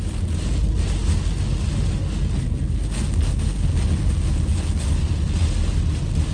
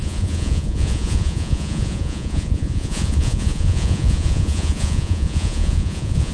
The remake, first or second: second